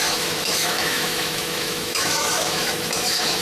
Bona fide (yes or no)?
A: no